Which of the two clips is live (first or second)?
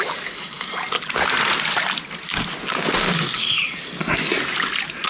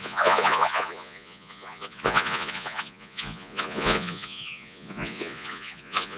first